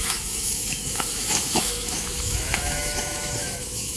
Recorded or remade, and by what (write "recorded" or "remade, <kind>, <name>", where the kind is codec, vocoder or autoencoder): remade, autoencoder, DAC-VAE